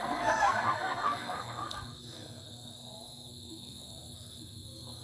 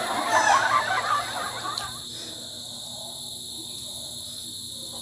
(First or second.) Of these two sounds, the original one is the second